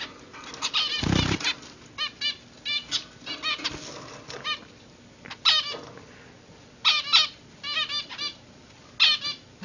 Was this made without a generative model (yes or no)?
yes